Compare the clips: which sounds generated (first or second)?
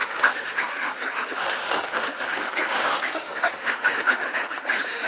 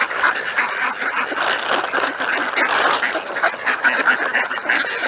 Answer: first